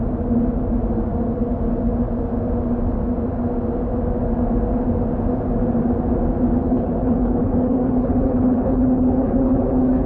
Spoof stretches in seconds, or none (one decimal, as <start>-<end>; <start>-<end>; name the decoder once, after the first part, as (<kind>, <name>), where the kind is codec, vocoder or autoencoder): 6.6-10.1 (codec, HILCodec)